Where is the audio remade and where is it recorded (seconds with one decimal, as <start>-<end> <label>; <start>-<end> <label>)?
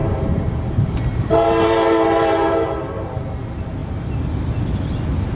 0.0-3.2 remade; 3.2-5.4 recorded